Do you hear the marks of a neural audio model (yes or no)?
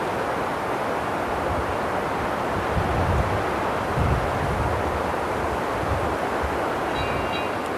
no